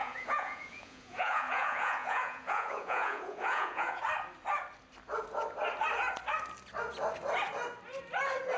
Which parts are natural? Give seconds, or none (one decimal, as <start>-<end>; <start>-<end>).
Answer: 4.0-8.6